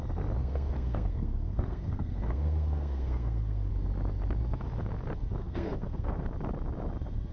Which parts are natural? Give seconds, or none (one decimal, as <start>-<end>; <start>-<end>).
0.0-0.4; 3.7-5.4; 6.1-7.3